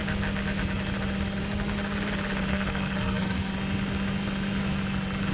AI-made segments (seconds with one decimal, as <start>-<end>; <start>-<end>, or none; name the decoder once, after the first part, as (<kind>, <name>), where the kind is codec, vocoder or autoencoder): 2.5-3.5 (codec, SNAC)